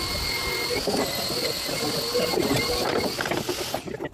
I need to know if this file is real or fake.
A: real